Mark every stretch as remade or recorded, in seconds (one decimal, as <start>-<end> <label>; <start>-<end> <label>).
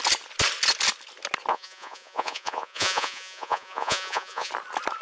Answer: 0.0-1.5 recorded; 1.5-4.5 remade; 4.5-5.0 recorded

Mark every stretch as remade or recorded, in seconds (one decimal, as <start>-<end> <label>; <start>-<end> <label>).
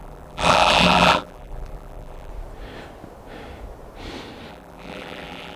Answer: 0.0-2.3 remade; 2.3-4.5 recorded; 4.5-5.6 remade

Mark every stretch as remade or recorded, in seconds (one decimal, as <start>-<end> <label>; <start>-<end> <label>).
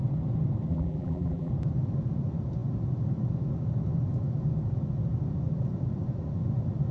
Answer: 0.0-0.7 recorded; 0.7-1.5 remade; 1.5-6.9 recorded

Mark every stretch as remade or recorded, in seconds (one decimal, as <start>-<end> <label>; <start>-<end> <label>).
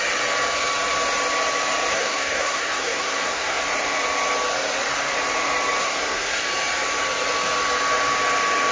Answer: 0.0-1.9 recorded; 1.9-3.6 remade; 3.6-5.8 recorded; 5.8-6.4 remade; 6.4-8.7 recorded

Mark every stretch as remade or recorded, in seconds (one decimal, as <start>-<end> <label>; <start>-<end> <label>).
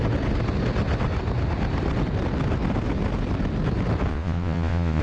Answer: 0.0-4.1 recorded; 4.1-5.0 remade